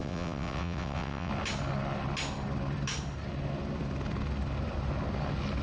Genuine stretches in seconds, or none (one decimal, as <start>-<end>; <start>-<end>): 1.3-5.6